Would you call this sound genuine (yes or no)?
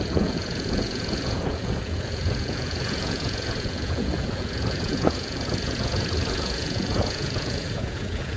no